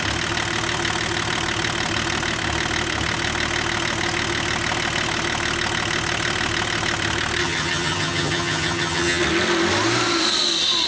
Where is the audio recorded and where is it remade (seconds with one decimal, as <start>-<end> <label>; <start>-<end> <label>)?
0.0-7.4 recorded; 7.4-9.2 remade; 9.2-10.9 recorded